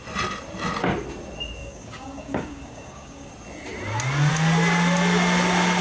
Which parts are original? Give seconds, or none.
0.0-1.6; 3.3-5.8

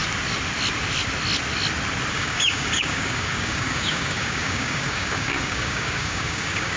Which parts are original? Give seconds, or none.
0.0-2.1

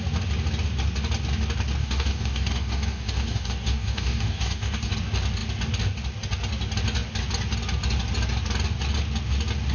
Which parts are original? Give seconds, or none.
0.0-1.8; 4.9-9.7